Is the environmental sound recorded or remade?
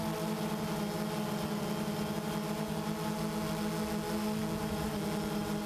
recorded